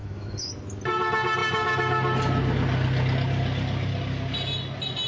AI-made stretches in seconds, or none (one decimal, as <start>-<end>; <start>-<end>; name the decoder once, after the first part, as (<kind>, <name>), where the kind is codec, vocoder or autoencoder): 0.0-0.5 (autoencoder, DAC-VAE)